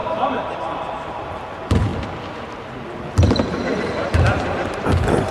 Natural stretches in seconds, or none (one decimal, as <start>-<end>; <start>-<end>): 0.0-0.7; 1.9-3.5